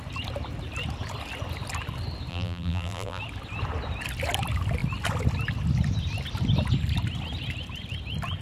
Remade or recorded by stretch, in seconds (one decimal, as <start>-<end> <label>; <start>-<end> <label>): 0.0-2.3 recorded; 2.3-3.2 remade; 3.2-8.4 recorded